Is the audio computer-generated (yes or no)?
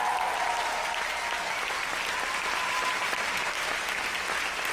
no